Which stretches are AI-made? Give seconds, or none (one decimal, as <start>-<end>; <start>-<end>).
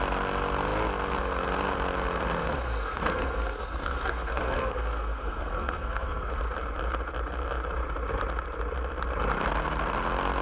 2.4-6.3